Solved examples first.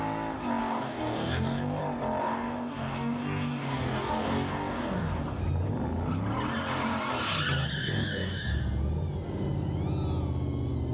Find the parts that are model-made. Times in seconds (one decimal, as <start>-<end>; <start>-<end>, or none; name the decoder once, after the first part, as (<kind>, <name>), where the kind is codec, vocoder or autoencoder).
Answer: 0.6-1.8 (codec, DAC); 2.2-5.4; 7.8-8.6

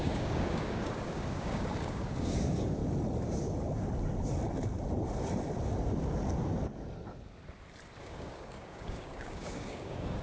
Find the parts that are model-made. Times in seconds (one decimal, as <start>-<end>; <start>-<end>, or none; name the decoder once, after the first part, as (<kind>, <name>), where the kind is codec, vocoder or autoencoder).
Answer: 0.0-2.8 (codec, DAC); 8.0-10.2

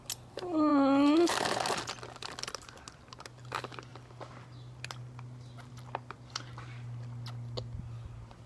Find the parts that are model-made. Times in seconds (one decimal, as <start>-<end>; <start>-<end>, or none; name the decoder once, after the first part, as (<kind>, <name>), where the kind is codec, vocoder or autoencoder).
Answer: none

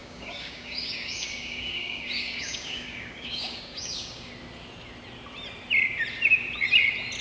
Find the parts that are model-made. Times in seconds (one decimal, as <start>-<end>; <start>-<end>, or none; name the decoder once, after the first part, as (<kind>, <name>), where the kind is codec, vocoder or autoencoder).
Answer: 0.0-4.3 (codec, DAC)

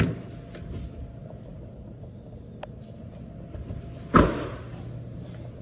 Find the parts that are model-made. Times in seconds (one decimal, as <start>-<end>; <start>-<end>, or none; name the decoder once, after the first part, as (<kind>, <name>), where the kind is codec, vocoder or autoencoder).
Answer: none

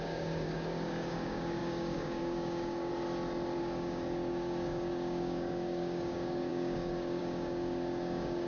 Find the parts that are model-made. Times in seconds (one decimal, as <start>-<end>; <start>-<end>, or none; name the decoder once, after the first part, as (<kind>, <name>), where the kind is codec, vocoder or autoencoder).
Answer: 0.0-2.9 (codec, DAC); 3.6-8.5